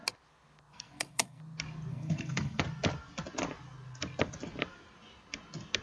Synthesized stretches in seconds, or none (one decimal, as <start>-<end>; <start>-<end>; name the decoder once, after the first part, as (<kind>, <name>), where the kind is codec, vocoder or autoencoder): 0.7-1.4 (codec, SNAC); 1.9-2.6